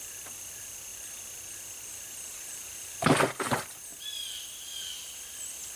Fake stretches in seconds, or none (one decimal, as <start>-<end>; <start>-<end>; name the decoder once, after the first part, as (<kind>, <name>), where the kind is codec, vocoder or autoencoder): 0.0-3.9 (vocoder, BigVGAN v2)